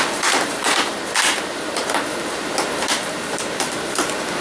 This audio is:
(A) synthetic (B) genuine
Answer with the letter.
A